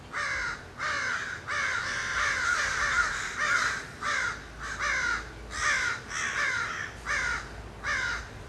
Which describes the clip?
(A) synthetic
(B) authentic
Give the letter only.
B